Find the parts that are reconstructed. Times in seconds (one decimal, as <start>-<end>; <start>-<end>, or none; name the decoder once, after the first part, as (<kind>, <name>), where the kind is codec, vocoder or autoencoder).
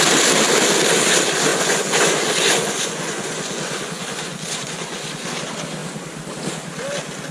1.5-5.3 (vocoder, Vocos)